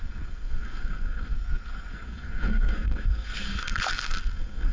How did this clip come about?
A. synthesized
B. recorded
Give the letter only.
A